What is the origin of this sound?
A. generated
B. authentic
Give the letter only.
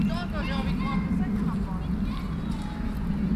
B